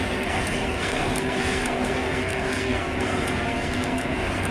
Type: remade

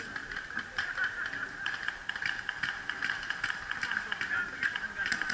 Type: recorded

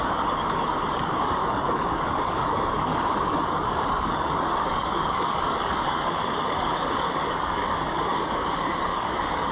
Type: remade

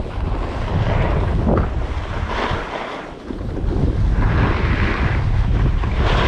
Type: recorded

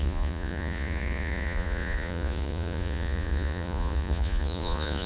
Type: remade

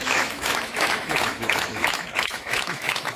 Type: remade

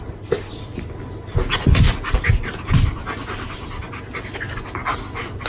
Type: recorded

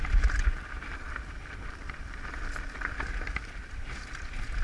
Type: recorded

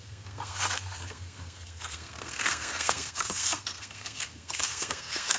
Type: remade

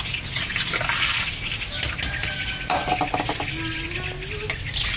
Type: recorded